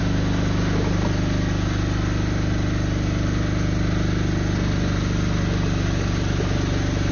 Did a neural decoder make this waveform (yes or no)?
no